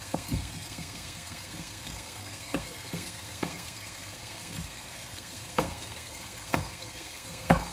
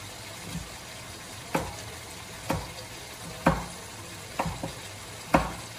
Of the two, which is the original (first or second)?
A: second